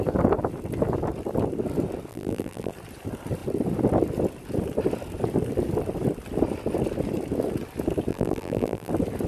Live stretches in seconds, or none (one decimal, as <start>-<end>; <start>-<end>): 0.0-2.1; 2.7-8.1; 8.9-9.3